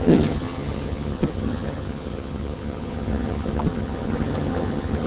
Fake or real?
fake